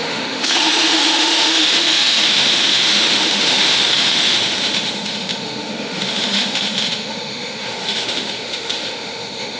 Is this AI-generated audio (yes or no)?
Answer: yes